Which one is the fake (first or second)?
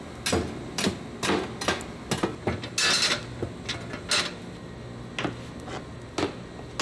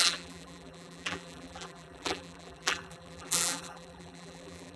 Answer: second